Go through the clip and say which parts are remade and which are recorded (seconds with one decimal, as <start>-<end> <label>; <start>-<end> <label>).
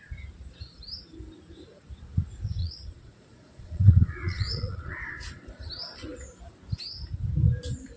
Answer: 0.0-2.6 recorded; 2.6-5.2 remade; 5.2-8.0 recorded